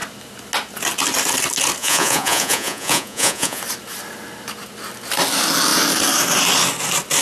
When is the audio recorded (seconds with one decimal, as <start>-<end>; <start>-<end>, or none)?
0.0-1.8; 3.6-7.2